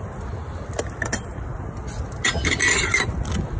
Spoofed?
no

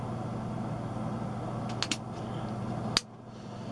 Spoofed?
no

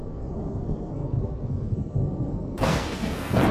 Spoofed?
yes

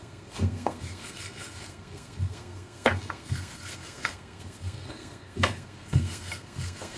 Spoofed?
yes